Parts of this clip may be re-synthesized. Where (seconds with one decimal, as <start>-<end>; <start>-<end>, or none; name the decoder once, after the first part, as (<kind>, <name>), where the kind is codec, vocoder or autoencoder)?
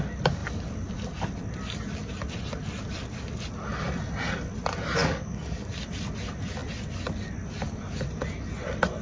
5.0-5.7 (codec, DAC)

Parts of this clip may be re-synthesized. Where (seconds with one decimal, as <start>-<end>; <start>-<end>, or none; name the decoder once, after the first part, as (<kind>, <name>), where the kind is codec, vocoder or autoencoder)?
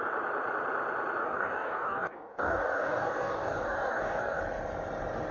1.2-4.4 (codec, DAC)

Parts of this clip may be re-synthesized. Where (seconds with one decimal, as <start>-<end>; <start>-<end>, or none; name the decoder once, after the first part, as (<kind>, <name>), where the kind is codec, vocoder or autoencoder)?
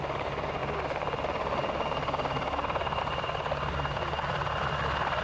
none